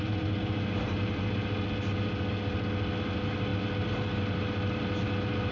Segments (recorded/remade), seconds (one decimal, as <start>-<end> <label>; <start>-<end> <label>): 0.0-5.5 recorded